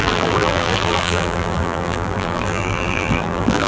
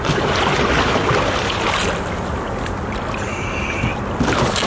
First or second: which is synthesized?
first